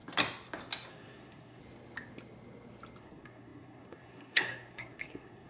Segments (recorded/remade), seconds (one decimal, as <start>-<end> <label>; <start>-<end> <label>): 0.0-0.9 recorded; 0.9-1.6 remade; 1.6-3.0 recorded; 3.0-5.5 remade